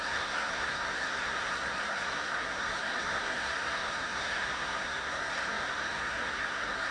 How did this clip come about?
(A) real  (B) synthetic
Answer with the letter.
B